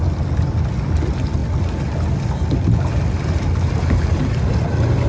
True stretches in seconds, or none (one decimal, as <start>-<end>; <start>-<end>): 0.0-5.1